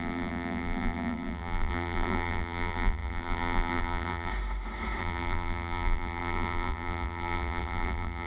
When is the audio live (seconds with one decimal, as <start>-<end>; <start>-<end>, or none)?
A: 4.3-5.0